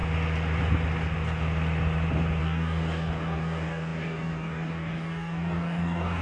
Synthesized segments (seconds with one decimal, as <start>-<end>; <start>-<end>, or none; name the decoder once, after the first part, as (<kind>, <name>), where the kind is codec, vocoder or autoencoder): 2.4-6.2 (codec, DAC)